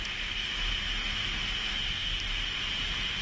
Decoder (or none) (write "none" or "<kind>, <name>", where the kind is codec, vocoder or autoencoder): none